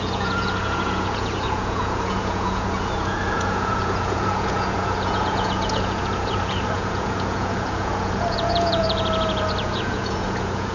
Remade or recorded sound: remade